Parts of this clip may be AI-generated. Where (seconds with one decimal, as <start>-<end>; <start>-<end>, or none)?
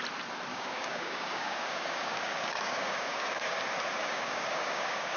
0.5-3.6; 4.0-5.2